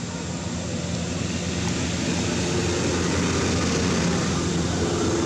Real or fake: real